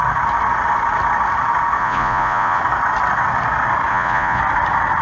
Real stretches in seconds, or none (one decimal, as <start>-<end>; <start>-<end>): 0.0-1.8; 2.6-3.9; 4.4-5.0